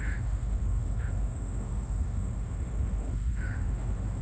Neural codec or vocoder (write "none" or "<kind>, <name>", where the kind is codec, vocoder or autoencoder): autoencoder, DAC-VAE